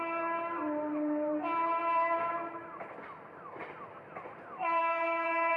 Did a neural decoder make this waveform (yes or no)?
yes